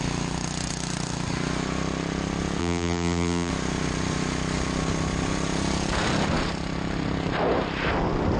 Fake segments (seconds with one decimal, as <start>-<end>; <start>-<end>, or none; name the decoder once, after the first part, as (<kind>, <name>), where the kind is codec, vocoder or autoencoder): 2.6-3.5 (vocoder, BigVGAN v2)